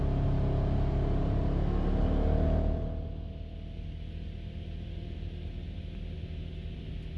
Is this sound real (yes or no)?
yes